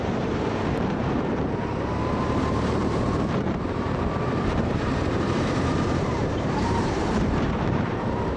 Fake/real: fake